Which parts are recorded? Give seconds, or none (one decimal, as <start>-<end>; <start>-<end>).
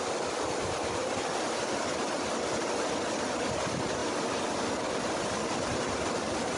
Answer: 0.0-6.6